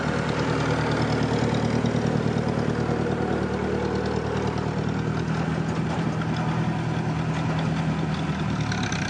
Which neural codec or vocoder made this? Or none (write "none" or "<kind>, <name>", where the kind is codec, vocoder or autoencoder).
none